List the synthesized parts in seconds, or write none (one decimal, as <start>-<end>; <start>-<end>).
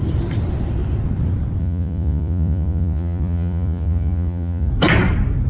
1.6-4.7